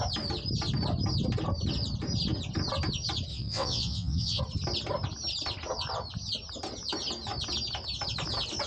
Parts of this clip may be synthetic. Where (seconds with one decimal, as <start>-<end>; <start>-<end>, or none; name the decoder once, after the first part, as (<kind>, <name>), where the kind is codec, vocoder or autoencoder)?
3.3-4.4 (vocoder, WaveNeXt)